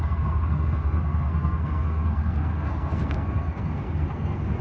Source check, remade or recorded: remade